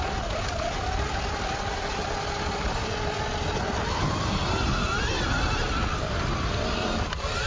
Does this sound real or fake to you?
real